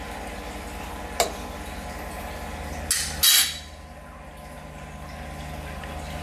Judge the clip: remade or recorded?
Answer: recorded